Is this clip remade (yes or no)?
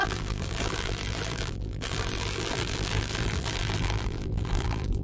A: yes